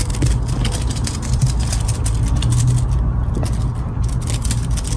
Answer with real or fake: real